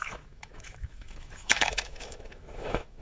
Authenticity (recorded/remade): remade